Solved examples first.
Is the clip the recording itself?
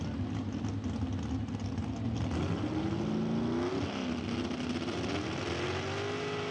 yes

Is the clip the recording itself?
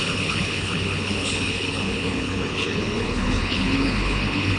no